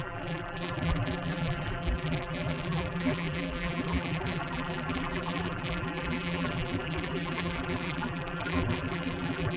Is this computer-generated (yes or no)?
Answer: yes